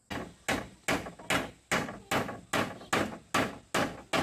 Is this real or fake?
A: real